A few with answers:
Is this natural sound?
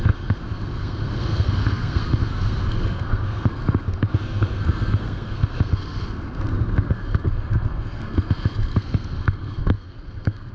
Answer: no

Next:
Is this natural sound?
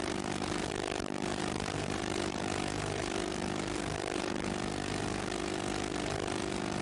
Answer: no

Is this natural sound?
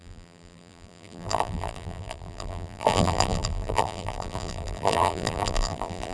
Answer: no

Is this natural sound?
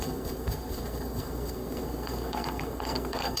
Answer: no